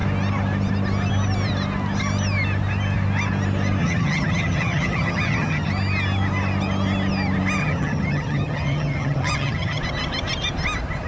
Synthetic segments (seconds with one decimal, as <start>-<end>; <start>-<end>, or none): 3.8-5.7; 7.6-9.8